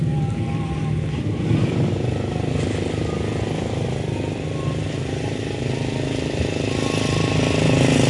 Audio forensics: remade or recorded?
recorded